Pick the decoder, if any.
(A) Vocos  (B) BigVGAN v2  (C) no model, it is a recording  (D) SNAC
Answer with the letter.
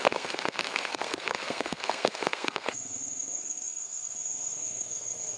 D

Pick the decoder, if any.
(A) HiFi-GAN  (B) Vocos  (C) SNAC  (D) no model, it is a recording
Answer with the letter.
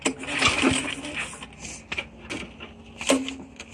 D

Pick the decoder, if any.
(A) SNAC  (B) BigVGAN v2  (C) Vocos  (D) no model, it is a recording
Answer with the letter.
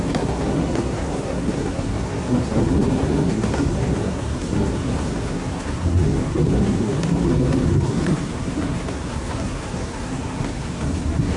A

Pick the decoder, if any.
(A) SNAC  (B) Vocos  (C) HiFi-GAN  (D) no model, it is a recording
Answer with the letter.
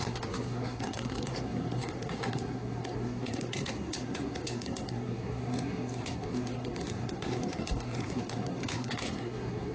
A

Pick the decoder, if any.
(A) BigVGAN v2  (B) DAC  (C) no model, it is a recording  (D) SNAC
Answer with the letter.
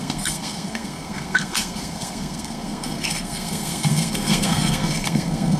D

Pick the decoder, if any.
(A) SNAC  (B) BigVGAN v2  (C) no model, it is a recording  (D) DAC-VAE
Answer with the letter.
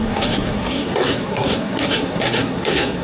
A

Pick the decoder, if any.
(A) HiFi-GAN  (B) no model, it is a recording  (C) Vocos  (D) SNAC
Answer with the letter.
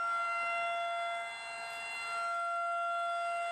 B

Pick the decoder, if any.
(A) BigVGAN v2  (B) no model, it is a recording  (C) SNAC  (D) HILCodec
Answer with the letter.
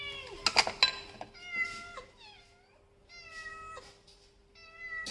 B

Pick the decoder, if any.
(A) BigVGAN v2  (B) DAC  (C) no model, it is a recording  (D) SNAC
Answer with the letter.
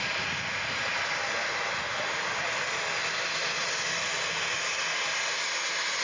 C